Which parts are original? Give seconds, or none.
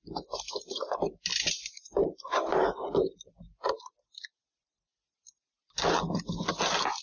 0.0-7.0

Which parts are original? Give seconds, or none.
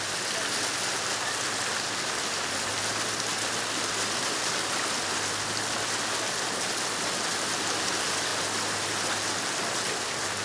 0.0-10.4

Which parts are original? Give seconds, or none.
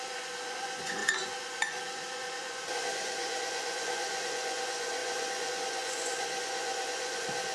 none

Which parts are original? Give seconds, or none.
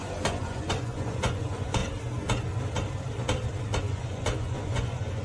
1.8-3.8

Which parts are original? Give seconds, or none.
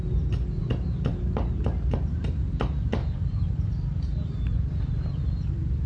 0.0-3.0; 5.2-5.9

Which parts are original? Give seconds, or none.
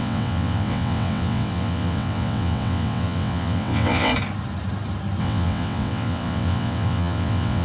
4.1-5.2